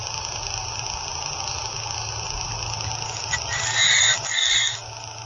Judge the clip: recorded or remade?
recorded